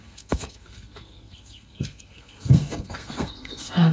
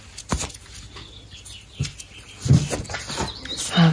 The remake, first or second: first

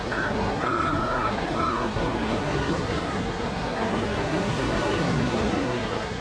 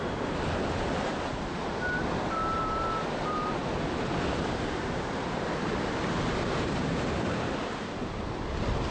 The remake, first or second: first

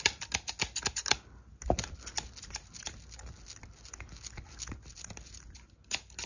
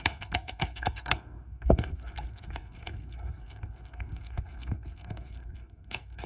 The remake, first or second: second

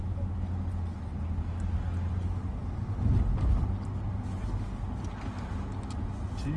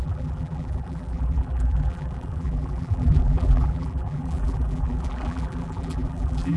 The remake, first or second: second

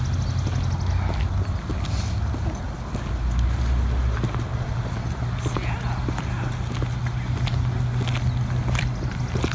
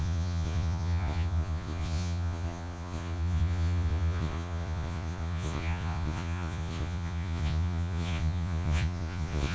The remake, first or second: second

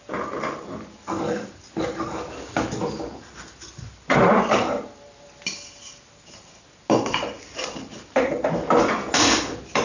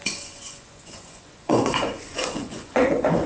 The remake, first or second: second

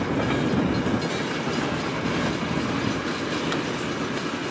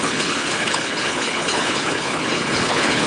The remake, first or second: second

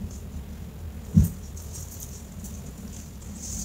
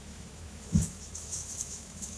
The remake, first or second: second